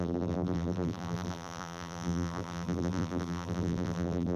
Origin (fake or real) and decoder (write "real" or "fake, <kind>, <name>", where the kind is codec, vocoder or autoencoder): fake, vocoder, BigVGAN v2